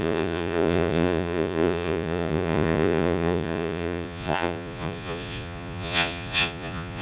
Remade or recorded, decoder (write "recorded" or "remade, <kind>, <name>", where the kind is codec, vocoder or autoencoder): remade, vocoder, Vocos